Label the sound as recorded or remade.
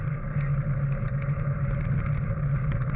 recorded